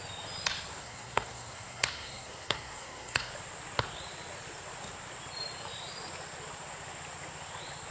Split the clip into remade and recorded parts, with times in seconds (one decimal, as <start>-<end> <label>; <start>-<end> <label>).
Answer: 0.0-0.8 recorded; 0.8-3.3 remade; 3.3-7.9 recorded